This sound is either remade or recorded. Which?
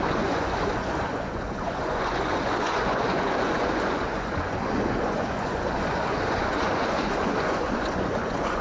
remade